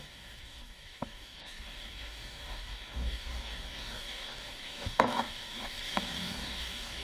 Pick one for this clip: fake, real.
fake